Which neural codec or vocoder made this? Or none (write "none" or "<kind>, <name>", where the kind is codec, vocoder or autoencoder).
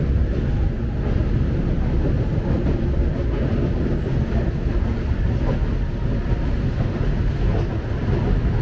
none